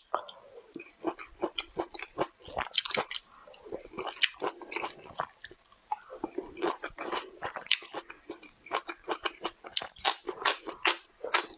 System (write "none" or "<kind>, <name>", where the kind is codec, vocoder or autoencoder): none